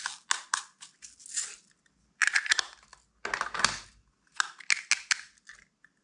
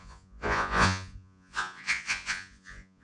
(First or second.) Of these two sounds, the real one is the first